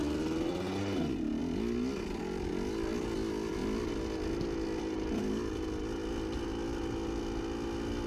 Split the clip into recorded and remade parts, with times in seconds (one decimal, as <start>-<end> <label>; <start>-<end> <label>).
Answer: 0.0-8.1 recorded